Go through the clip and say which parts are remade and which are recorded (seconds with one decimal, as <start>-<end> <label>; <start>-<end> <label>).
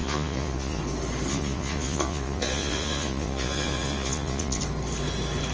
0.0-0.8 remade; 0.8-1.3 recorded; 1.3-4.6 remade; 4.6-5.5 recorded